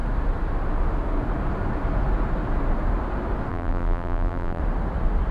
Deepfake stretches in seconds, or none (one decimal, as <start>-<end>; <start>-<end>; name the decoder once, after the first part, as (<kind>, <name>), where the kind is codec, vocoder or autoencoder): 3.5-4.6 (vocoder, BigVGAN v2)